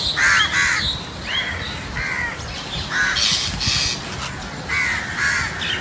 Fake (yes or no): no